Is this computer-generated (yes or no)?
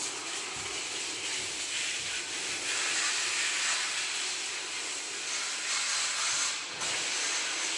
no